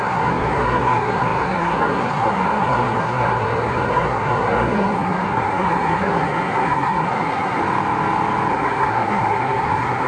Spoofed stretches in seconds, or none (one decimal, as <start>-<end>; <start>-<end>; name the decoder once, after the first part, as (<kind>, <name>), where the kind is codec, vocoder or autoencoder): 0.0-7.6 (codec, SNAC); 8.5-10.1